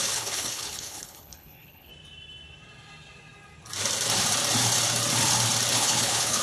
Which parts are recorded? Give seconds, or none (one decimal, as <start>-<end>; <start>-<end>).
1.9-5.7